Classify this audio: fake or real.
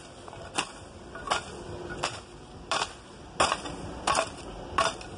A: real